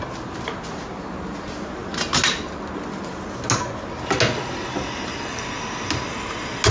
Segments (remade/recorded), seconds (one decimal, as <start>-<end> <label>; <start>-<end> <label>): 0.0-6.7 recorded